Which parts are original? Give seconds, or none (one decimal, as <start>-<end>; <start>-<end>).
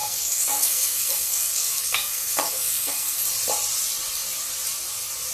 3.2-5.3